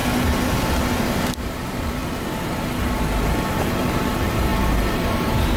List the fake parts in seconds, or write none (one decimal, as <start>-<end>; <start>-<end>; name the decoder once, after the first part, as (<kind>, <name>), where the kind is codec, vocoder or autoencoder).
1.4-2.0 (vocoder, BigVGAN v2); 3.2-5.6